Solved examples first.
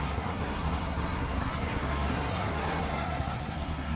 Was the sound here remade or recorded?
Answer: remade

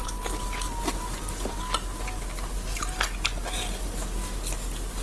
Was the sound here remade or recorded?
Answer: recorded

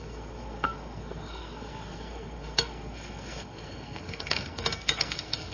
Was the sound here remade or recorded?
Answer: remade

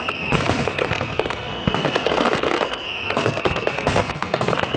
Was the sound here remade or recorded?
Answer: remade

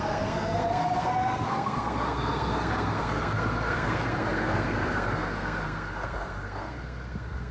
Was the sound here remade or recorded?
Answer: remade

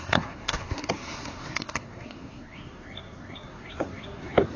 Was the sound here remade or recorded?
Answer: remade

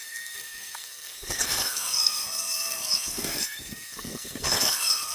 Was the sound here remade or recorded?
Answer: remade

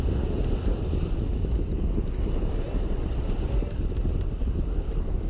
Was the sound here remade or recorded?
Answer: recorded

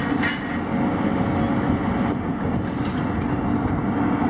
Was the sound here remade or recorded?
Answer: recorded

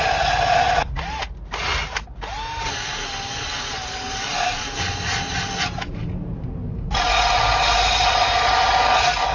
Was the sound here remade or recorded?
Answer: recorded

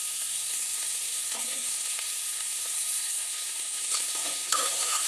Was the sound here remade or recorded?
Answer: remade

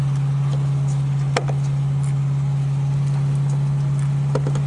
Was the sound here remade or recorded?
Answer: recorded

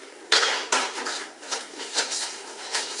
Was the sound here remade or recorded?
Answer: remade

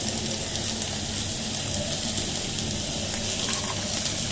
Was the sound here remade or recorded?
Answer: recorded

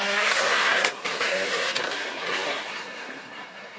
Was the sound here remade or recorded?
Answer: remade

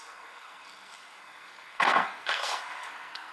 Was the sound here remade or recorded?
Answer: remade